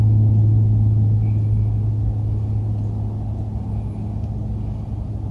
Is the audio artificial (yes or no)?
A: no